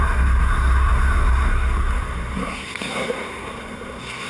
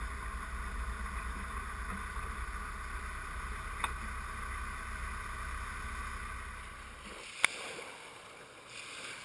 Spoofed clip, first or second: first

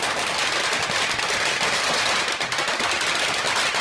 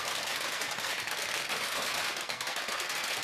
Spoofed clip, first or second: second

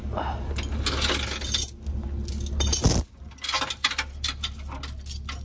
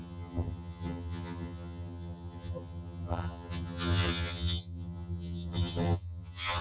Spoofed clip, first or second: second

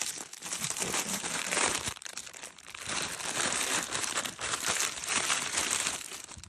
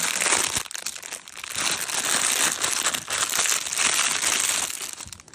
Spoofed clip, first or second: first